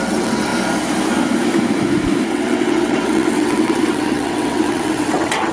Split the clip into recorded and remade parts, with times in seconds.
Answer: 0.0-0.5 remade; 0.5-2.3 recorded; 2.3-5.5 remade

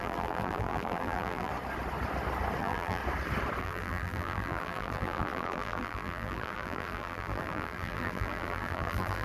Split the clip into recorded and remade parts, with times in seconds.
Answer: 0.0-1.5 remade; 1.5-2.6 recorded; 2.6-3.0 remade; 3.0-3.6 recorded; 3.6-9.2 remade

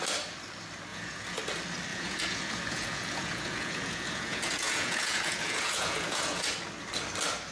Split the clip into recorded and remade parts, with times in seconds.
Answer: 0.0-0.9 recorded; 0.9-1.4 remade; 1.4-1.9 recorded; 1.9-6.4 remade; 6.4-7.5 recorded

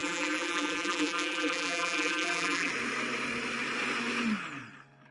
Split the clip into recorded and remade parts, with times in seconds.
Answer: 0.0-2.7 remade; 2.7-5.1 recorded

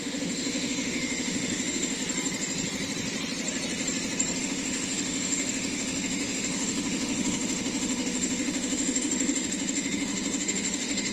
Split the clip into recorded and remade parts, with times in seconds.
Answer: 0.0-2.0 remade; 2.0-4.4 recorded; 4.4-11.1 remade

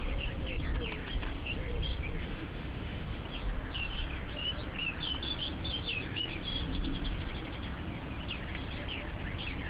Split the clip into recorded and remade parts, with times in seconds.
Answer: 0.0-2.2 recorded; 2.2-3.2 remade; 3.2-9.7 recorded

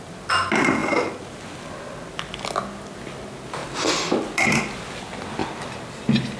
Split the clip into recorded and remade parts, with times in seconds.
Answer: 0.0-6.4 recorded

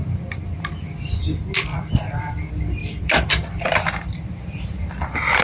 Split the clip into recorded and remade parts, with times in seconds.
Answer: 0.0-0.6 remade; 0.6-1.7 recorded; 1.7-2.3 remade; 2.3-2.8 recorded; 2.8-4.6 remade; 4.6-5.4 recorded